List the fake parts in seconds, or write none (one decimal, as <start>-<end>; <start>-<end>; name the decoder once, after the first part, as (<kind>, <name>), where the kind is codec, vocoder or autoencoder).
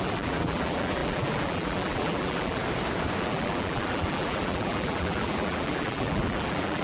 0.0-2.6 (vocoder, BigVGAN v2); 3.2-6.8